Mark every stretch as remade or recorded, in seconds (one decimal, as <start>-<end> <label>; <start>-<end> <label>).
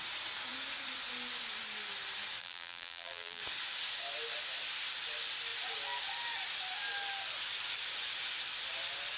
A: 0.0-2.4 recorded; 2.4-3.4 remade; 3.4-9.2 recorded